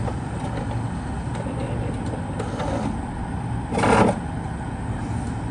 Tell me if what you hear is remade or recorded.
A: recorded